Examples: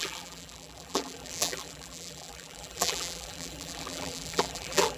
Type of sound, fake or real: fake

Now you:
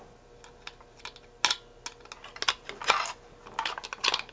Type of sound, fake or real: real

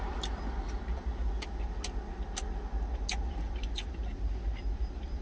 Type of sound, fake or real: real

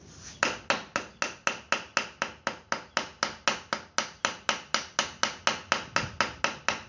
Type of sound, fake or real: real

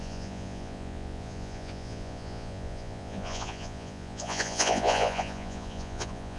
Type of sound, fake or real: fake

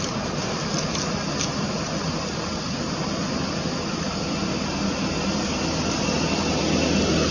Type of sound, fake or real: real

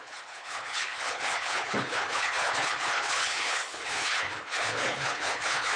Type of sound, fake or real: fake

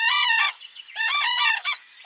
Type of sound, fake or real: fake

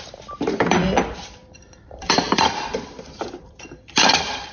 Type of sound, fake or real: fake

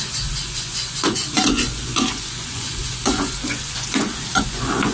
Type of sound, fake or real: fake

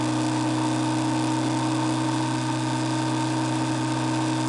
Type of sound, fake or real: real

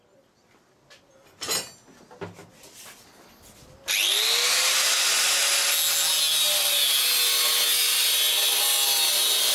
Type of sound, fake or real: real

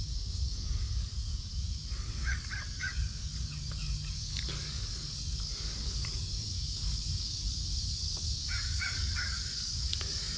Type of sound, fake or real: fake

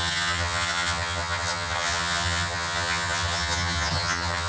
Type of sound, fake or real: fake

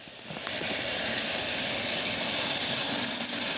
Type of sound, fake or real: real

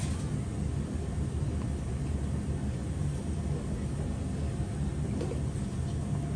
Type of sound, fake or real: real